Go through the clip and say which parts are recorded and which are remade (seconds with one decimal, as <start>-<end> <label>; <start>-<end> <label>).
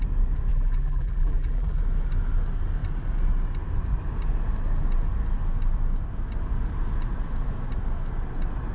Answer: 0.0-0.5 recorded; 0.5-1.8 remade; 1.8-8.7 recorded